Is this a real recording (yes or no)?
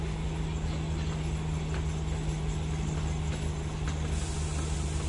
yes